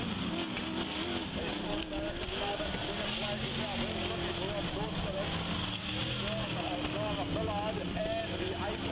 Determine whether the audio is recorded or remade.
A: recorded